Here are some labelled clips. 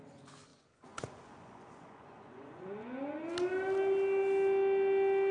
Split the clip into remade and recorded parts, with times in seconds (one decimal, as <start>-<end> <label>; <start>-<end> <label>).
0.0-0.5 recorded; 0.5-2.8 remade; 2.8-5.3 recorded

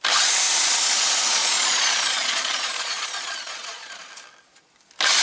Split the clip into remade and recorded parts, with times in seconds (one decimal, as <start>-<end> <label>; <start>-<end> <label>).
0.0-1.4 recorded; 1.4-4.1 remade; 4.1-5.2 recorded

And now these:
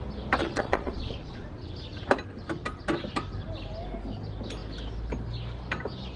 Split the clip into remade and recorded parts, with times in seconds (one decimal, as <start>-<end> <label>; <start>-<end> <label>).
0.0-0.4 recorded; 0.4-1.5 remade; 1.5-6.2 recorded

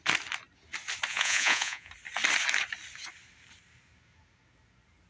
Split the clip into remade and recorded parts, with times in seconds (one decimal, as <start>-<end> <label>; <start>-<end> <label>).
0.0-1.1 recorded; 1.1-1.9 remade; 1.9-5.1 recorded